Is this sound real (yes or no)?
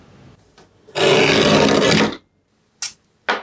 yes